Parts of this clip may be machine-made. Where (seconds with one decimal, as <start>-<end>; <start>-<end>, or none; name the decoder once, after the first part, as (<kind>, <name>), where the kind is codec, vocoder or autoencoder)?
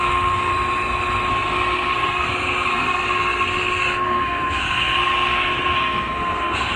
0.0-0.5 (codec, SNAC); 1.3-6.8